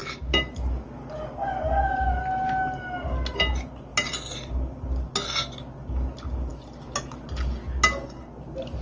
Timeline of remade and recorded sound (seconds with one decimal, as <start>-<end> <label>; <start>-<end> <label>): 0.0-8.8 recorded